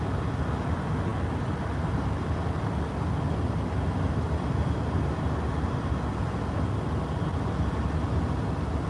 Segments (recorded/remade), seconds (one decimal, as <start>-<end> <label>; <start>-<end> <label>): 0.0-8.9 recorded